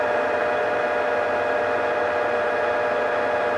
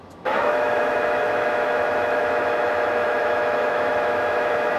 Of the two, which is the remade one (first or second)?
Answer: second